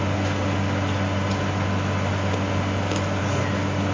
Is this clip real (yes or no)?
yes